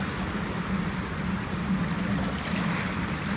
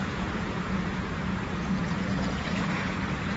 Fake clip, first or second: second